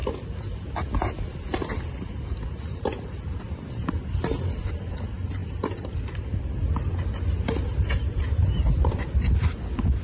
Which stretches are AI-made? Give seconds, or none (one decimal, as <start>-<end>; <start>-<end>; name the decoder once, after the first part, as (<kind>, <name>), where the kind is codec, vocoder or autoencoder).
none